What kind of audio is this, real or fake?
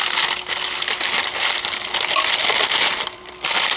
fake